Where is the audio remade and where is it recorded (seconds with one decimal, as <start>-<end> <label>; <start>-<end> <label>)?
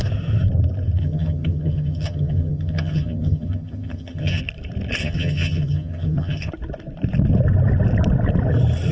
0.0-1.0 recorded; 1.0-4.4 remade; 4.4-5.0 recorded; 5.0-6.5 remade; 6.5-8.9 recorded